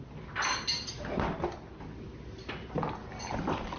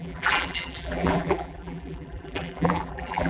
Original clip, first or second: first